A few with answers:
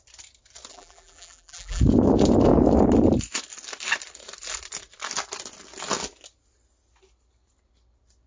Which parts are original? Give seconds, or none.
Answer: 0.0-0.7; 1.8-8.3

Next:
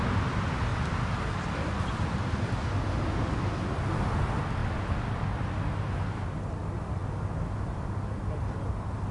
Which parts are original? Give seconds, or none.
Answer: 0.0-9.1

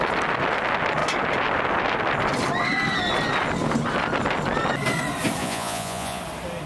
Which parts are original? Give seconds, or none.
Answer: 0.0-5.4; 6.2-6.7